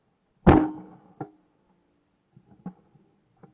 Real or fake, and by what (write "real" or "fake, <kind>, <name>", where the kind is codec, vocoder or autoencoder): real